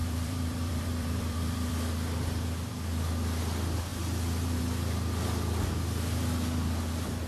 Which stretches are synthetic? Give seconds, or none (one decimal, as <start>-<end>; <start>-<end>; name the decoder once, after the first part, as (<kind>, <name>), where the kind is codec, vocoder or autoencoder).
0.0-1.7 (vocoder, BigVGAN v2)